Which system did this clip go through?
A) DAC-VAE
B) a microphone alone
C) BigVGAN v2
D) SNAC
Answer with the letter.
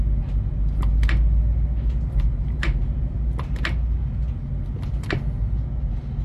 B